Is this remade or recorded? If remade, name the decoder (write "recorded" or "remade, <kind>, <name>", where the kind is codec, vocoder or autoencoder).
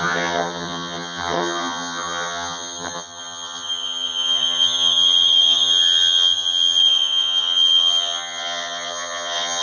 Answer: remade, vocoder, HiFi-GAN